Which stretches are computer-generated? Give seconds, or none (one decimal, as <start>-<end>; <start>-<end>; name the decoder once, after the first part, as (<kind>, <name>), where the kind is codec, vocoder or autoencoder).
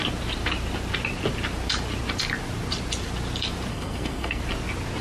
3.7-4.4 (codec, SNAC)